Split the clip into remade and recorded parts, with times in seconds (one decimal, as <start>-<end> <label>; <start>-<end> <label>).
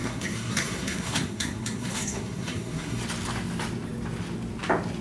0.0-3.0 remade; 3.0-5.0 recorded